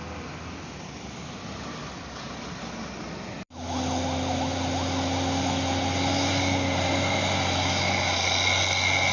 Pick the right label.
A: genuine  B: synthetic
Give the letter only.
A